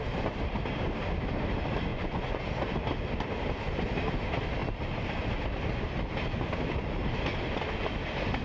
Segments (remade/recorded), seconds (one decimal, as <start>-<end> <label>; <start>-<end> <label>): 0.0-1.9 recorded; 1.9-2.4 remade; 2.4-8.4 recorded